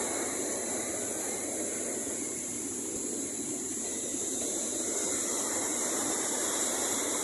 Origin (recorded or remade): remade